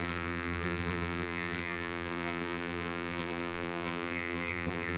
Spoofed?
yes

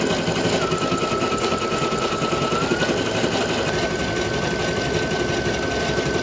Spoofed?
no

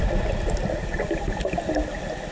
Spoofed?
no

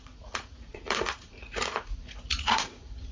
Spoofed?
yes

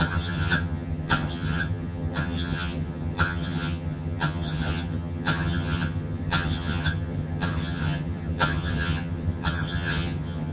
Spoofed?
yes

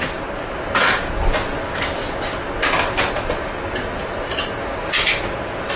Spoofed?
no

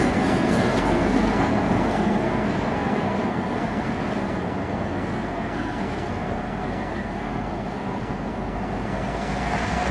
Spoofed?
yes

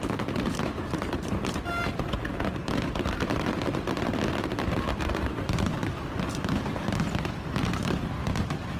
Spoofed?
no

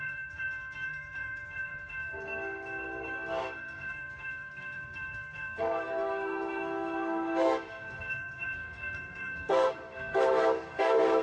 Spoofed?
yes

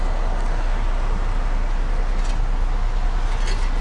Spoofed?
no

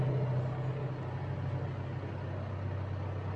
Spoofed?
no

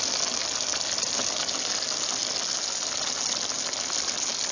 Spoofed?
no